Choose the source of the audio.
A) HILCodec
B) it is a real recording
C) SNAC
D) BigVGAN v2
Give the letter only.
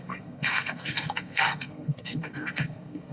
C